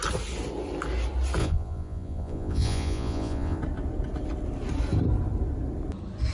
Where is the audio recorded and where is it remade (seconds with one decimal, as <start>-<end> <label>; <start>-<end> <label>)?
0.0-1.4 recorded; 1.4-3.6 remade; 3.6-6.3 recorded